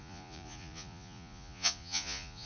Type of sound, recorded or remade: remade